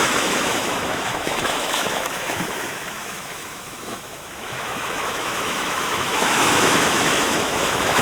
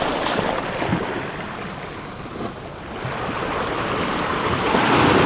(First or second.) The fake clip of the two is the first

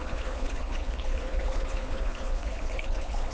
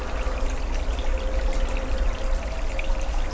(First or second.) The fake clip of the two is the first